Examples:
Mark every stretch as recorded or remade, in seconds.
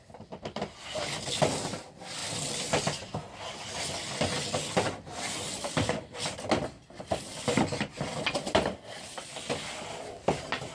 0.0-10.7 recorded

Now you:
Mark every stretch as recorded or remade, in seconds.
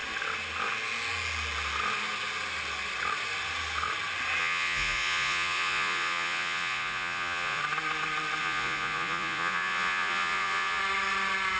0.0-4.4 recorded; 4.4-7.6 remade; 7.6-8.4 recorded; 8.4-10.8 remade; 10.8-11.6 recorded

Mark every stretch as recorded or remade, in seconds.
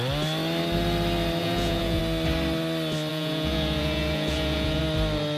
0.0-1.4 recorded; 1.4-2.0 remade; 2.0-3.1 recorded; 3.1-4.8 remade; 4.8-5.4 recorded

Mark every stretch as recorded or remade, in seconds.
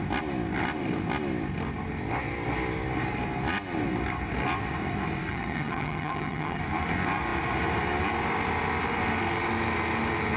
0.0-5.3 recorded; 5.3-6.6 remade; 6.6-10.4 recorded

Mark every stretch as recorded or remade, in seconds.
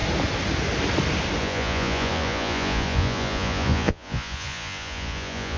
0.0-1.4 recorded; 1.4-5.6 remade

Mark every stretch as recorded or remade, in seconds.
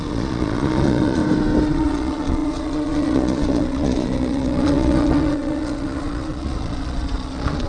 0.0-1.2 remade; 1.2-1.7 recorded; 1.7-7.7 remade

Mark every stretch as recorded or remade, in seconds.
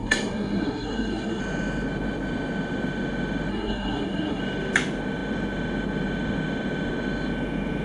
0.0-1.4 remade; 1.4-3.5 recorded; 3.5-4.4 remade; 4.4-7.8 recorded